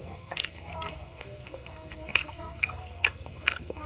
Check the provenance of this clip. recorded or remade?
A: remade